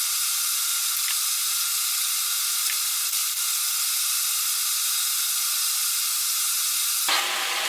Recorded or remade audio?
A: recorded